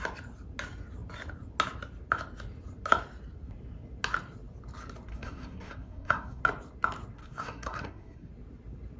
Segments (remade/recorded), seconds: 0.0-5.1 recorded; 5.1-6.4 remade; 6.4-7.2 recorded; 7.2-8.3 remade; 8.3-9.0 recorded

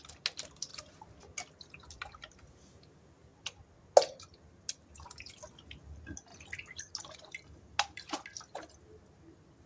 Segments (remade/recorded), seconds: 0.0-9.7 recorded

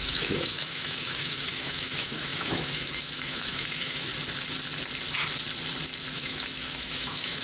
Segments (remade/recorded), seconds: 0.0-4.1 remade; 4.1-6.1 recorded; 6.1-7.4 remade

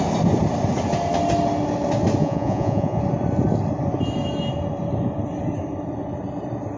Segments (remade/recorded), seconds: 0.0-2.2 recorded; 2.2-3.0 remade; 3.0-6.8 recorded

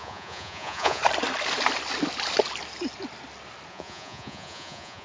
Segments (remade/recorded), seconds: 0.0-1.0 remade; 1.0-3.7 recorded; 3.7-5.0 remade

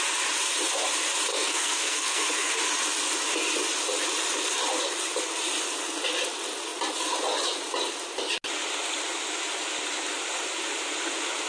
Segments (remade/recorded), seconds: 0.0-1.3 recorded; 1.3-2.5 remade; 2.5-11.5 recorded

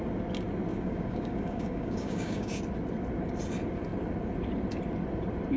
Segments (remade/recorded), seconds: 0.0-0.7 recorded; 0.7-2.6 remade; 2.6-5.6 recorded

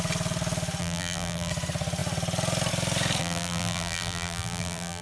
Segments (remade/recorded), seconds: 0.0-0.8 recorded; 0.8-1.5 remade; 1.5-3.2 recorded; 3.2-5.0 remade